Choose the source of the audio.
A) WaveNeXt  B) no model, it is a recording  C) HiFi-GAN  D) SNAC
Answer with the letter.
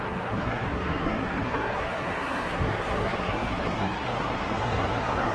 D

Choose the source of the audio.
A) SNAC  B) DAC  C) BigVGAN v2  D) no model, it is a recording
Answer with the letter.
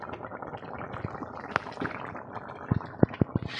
D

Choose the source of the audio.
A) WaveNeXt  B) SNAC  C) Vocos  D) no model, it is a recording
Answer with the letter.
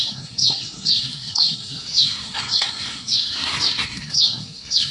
B